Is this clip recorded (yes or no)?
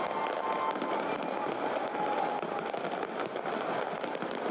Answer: yes